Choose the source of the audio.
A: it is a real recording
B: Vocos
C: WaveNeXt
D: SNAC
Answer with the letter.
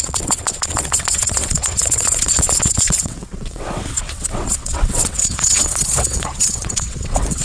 C